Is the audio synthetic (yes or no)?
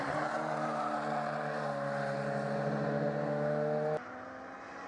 no